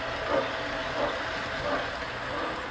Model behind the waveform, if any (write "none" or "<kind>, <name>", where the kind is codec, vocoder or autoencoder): none